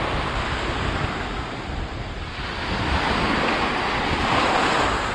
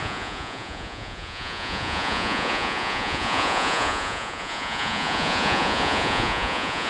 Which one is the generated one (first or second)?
second